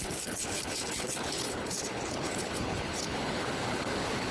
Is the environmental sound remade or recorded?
remade